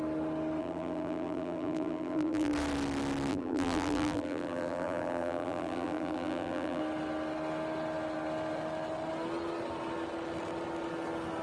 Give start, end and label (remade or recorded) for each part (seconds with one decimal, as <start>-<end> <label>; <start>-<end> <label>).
0.0-0.6 recorded; 0.6-2.5 remade; 2.5-3.3 recorded; 3.3-6.8 remade; 6.8-11.4 recorded